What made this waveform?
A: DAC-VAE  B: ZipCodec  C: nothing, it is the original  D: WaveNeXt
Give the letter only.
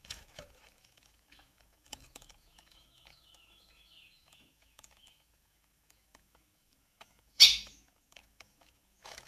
A